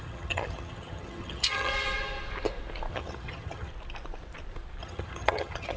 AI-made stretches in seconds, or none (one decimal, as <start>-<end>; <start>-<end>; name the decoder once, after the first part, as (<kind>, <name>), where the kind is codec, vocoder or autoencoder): 0.0-1.7 (vocoder, HiFi-GAN); 2.9-3.7; 4.8-5.8